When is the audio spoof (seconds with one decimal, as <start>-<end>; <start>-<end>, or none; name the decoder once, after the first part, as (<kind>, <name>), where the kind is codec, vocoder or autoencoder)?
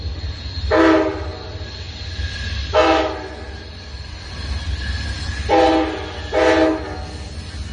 none